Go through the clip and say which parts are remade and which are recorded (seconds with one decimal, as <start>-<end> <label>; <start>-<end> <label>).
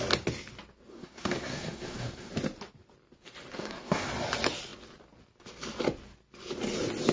0.0-0.9 recorded; 0.9-2.3 remade; 2.3-3.6 recorded; 3.6-4.1 remade; 4.1-7.1 recorded